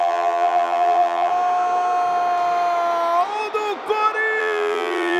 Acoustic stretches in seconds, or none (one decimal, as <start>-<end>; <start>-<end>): 1.3-4.4